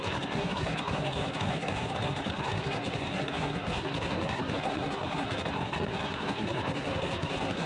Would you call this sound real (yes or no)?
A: no